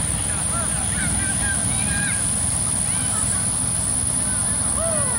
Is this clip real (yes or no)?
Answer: yes